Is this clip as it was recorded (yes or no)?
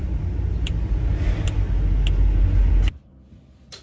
yes